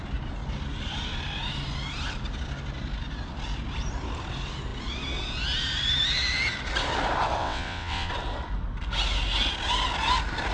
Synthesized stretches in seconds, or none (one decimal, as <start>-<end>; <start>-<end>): 7.4-8.1